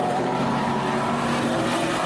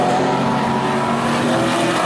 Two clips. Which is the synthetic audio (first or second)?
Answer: first